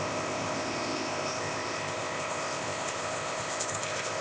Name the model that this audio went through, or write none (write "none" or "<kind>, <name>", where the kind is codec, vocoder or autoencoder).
codec, ZipCodec